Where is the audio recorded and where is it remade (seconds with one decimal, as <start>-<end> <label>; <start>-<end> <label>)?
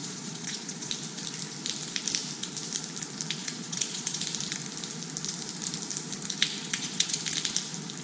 0.0-0.9 remade; 0.9-3.4 recorded; 3.4-4.2 remade; 4.2-6.6 recorded; 6.6-7.2 remade; 7.2-8.0 recorded